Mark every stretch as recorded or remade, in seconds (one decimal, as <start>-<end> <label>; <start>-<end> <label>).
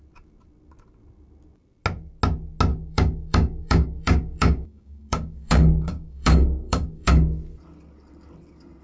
0.0-2.7 recorded; 2.7-7.1 remade; 7.1-8.8 recorded